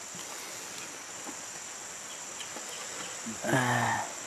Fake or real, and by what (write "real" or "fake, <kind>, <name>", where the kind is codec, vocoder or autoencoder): real